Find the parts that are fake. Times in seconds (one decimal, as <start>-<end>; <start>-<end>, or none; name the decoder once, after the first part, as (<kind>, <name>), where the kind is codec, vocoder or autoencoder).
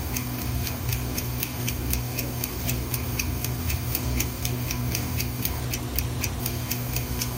0.0-5.6 (codec, DAC); 6.4-7.4